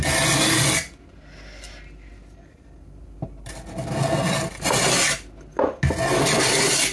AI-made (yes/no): no